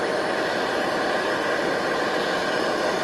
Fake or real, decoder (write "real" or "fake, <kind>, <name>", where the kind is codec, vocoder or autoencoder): real